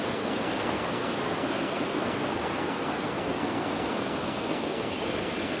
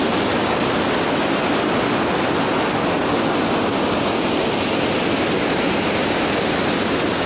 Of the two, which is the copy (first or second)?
first